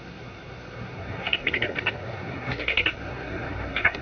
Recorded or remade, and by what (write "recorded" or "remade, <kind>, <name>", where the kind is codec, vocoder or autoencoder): remade, codec, SNAC